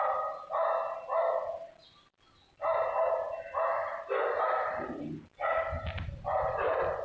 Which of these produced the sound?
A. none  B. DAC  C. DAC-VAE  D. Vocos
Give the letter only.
A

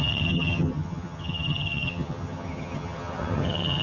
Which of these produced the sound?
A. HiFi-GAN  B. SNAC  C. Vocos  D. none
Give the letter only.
A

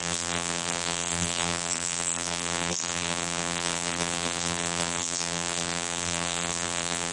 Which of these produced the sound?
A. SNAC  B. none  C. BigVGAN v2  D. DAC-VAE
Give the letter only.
C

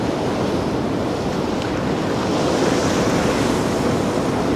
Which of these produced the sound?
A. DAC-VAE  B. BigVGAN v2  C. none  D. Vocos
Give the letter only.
C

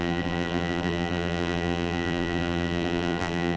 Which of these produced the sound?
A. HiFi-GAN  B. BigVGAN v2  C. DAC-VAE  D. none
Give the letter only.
B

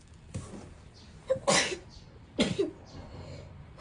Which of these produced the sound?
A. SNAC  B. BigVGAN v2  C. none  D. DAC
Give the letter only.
C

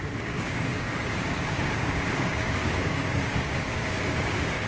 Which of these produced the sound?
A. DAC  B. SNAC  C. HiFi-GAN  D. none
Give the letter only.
A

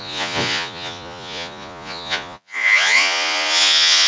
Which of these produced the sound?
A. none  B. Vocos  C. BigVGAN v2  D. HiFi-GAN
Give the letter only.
B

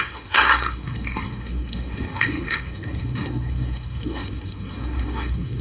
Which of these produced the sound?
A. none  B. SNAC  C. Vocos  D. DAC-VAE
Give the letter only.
B